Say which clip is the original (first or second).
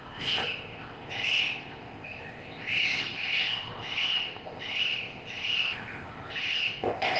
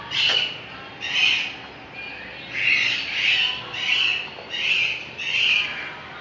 second